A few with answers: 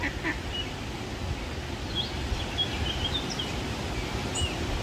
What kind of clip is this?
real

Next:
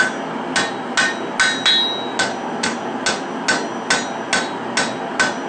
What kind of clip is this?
real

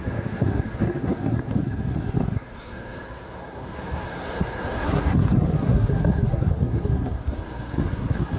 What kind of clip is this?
fake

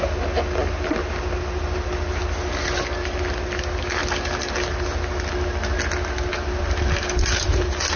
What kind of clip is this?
real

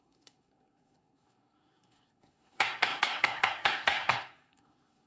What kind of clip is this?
fake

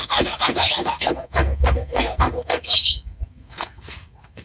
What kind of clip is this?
fake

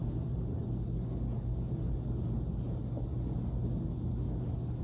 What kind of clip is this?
real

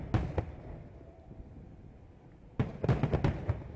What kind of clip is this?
real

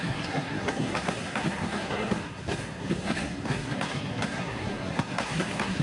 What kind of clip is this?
fake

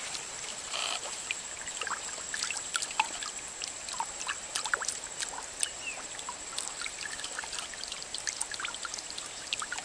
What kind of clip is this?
real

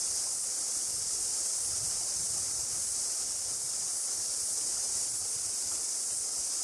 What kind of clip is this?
real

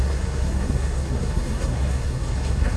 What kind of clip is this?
fake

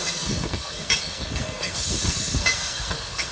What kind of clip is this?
fake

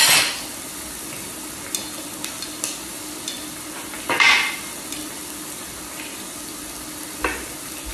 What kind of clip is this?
real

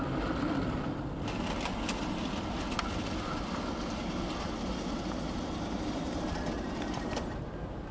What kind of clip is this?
real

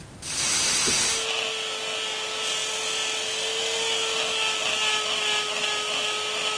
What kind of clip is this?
real